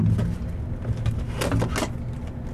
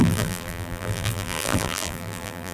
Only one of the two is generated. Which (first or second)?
second